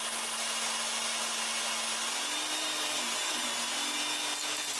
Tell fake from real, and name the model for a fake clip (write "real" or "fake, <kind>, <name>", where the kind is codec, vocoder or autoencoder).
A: real